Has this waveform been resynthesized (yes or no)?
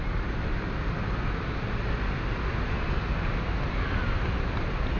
no